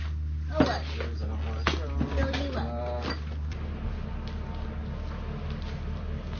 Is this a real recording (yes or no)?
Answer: yes